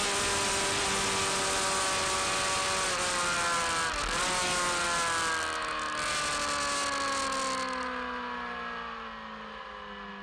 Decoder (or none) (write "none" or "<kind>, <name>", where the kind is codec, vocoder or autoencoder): none